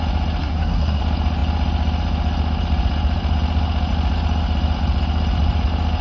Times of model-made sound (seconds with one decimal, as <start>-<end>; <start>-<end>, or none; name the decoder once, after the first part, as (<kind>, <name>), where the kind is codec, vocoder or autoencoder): 0.4-1.0 (codec, SNAC)